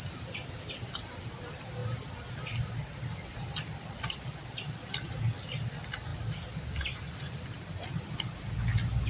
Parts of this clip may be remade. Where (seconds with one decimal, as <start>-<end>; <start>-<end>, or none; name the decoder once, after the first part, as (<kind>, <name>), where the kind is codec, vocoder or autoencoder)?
none